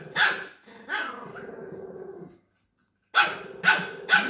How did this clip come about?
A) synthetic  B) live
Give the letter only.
B